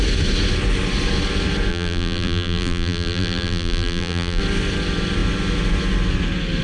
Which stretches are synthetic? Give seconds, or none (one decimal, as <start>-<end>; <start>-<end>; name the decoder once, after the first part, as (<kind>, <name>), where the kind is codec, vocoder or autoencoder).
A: 1.7-4.4 (vocoder, BigVGAN v2)